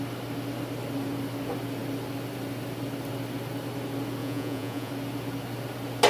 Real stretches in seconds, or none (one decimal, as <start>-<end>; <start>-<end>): 0.0-4.2; 4.9-6.1